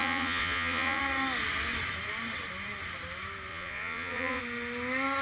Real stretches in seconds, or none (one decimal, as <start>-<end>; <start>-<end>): 1.0-3.5; 4.4-5.2